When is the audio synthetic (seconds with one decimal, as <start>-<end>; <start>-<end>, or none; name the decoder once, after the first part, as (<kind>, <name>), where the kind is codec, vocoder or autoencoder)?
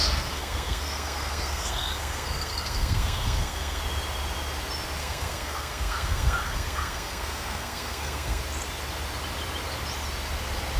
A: 0.0-3.8 (codec, SNAC); 5.0-8.4